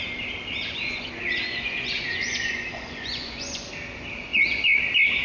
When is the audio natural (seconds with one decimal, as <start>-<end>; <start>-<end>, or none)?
0.0-0.6; 3.7-5.2